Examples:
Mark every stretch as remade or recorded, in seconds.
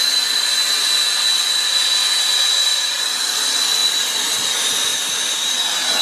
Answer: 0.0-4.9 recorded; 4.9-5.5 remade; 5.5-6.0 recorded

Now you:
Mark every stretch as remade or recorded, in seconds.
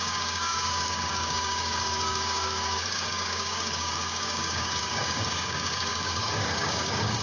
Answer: 0.0-7.2 remade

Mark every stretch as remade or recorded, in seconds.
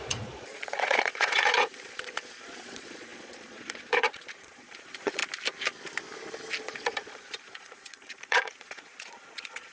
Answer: 0.0-5.2 remade; 5.2-6.6 recorded; 6.6-9.7 remade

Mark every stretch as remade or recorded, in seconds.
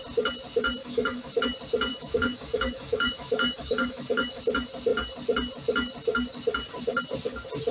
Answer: 0.0-0.8 recorded; 0.8-1.4 remade; 1.4-1.9 recorded; 1.9-4.4 remade; 4.4-7.7 recorded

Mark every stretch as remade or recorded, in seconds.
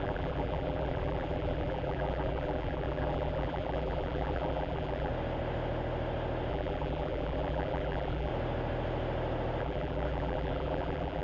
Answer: 0.0-5.1 remade; 5.1-6.5 recorded; 6.5-8.3 remade; 8.3-9.6 recorded; 9.6-11.2 remade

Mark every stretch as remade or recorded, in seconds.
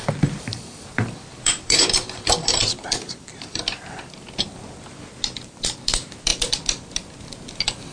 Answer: 0.0-0.5 recorded; 0.5-3.6 remade; 3.6-7.9 recorded